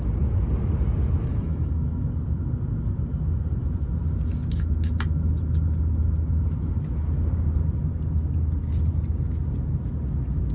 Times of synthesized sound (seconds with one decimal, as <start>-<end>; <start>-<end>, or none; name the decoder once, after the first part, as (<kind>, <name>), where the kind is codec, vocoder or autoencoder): 1.3-2.1 (autoencoder, DAC-VAE)